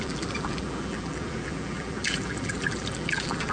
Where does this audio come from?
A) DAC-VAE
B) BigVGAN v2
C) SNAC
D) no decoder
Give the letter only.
B